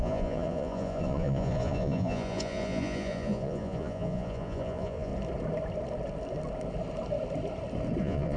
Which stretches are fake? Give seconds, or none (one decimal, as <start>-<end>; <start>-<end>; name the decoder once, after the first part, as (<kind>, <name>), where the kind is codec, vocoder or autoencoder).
0.0-5.1 (vocoder, Vocos); 8.0-8.4